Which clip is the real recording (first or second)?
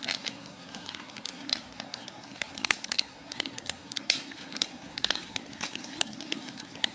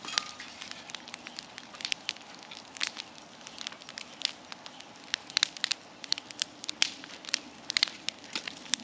second